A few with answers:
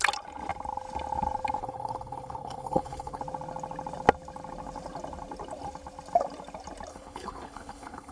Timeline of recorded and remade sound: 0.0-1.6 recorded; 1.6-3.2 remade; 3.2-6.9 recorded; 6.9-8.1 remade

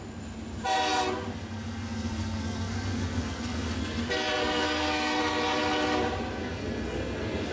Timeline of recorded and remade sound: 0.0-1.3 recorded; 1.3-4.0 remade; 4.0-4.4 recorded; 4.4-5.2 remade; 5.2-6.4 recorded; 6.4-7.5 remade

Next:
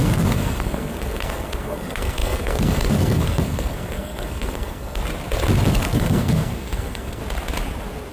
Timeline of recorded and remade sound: 0.0-5.0 remade; 5.0-5.7 recorded; 5.7-7.2 remade; 7.2-8.1 recorded

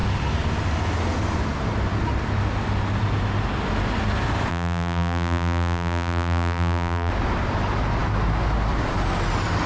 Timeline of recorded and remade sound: 0.0-4.5 recorded; 4.5-7.1 remade; 7.1-9.7 recorded

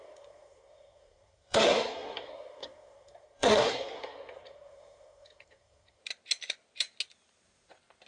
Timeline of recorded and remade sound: 0.0-6.0 remade; 6.0-8.1 recorded

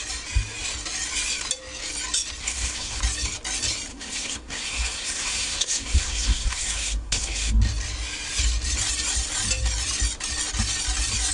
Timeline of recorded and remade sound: 0.0-2.4 recorded; 2.4-3.0 remade; 3.0-3.9 recorded; 3.9-7.5 remade; 7.5-11.3 recorded